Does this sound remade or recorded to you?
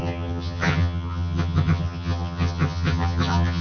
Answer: remade